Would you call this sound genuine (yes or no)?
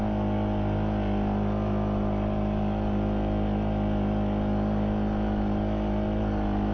yes